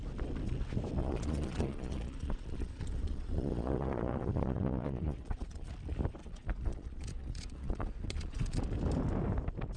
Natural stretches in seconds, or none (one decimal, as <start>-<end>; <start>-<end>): 0.0-1.0; 5.7-6.2; 8.6-9.8